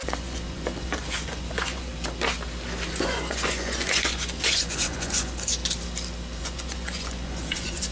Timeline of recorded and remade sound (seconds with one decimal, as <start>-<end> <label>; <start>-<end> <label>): 0.0-1.9 remade; 1.9-2.9 recorded; 2.9-5.6 remade; 5.6-6.4 recorded; 6.4-7.9 remade